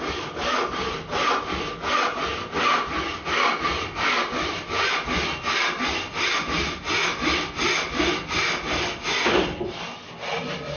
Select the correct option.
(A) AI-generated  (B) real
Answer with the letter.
B